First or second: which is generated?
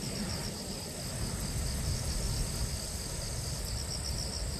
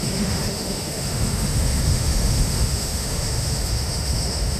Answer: second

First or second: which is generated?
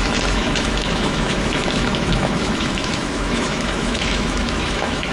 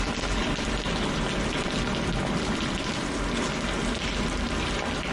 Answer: first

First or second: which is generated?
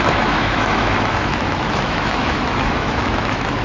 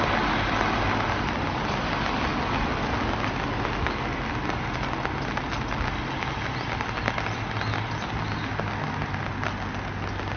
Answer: first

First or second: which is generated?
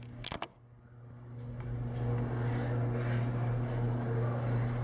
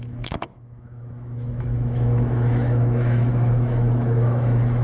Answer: second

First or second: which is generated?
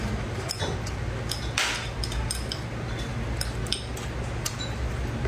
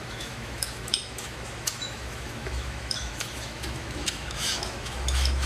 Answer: second